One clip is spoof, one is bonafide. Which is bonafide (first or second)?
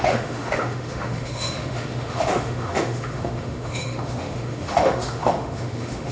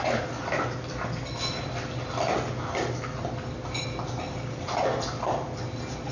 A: second